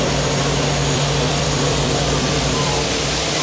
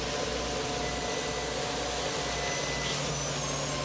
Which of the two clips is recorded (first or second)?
second